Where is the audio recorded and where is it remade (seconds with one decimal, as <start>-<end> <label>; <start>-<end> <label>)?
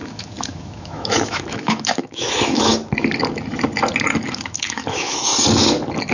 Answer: 0.0-2.7 remade; 2.7-4.3 recorded; 4.3-5.3 remade; 5.3-6.1 recorded